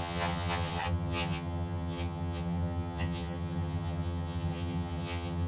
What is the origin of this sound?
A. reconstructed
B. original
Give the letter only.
A